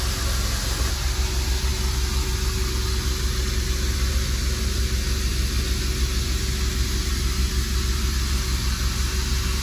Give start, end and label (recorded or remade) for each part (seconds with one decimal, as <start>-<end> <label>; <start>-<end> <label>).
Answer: 0.0-9.6 recorded